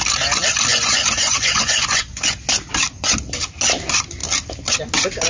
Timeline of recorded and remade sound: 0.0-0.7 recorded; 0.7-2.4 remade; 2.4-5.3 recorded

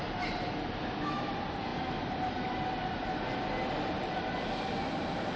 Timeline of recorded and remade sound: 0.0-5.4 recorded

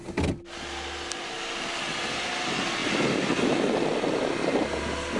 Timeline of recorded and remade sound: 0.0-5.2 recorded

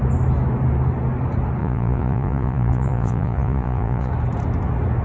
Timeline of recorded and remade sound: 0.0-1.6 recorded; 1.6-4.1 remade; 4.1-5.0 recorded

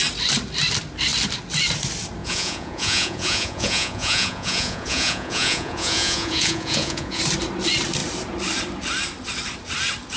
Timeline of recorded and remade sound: 0.0-2.2 recorded; 2.2-7.2 remade; 7.2-10.2 recorded

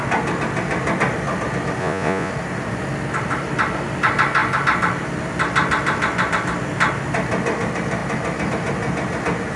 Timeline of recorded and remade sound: 0.0-1.8 recorded; 1.8-2.3 remade; 2.3-9.6 recorded